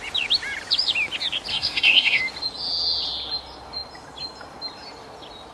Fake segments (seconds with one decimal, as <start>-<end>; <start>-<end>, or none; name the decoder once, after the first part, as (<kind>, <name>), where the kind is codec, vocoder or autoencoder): 1.5-2.2 (codec, SNAC)